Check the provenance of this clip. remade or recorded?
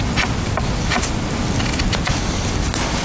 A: recorded